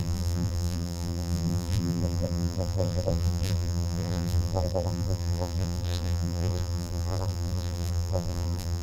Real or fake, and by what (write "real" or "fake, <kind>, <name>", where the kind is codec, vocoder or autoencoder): fake, vocoder, BigVGAN v2